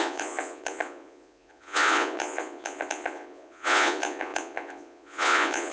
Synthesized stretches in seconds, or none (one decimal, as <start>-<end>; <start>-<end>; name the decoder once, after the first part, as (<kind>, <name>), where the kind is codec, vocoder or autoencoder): 0.0-5.7 (vocoder, Vocos)